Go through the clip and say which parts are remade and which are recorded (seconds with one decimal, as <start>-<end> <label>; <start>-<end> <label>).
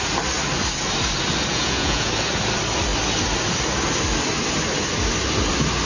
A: 0.0-1.5 recorded; 1.5-2.1 remade; 2.1-5.9 recorded